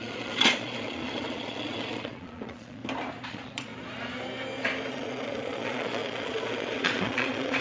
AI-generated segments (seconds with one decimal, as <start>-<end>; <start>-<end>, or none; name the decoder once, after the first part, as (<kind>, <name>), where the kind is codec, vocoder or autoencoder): 0.0-2.8 (vocoder, Vocos); 3.3-3.7; 4.9-7.6